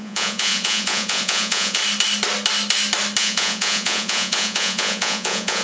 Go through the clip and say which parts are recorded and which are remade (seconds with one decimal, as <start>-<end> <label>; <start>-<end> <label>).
0.0-1.8 remade; 1.8-3.2 recorded; 3.2-5.6 remade